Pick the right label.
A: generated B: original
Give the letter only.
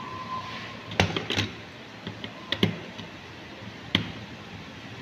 B